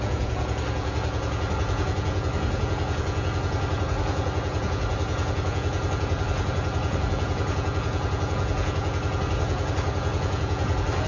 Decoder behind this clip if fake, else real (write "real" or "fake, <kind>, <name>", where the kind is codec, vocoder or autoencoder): fake, vocoder, Vocos